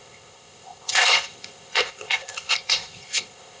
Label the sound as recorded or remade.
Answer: remade